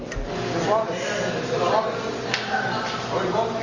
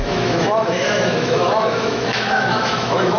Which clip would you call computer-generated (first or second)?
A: second